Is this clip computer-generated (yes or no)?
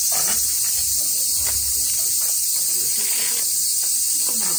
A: no